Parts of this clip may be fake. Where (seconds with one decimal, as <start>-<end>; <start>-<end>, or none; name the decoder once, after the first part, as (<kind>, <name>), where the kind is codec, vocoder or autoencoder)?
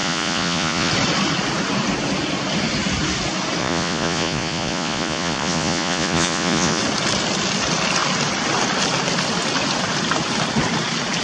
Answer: 0.0-0.9 (vocoder, Vocos); 3.6-6.8